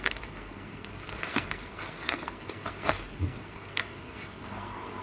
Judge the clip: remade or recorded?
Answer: remade